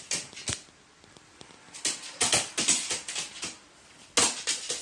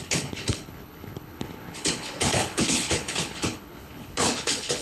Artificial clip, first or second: second